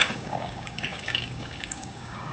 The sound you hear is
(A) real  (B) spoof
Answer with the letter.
B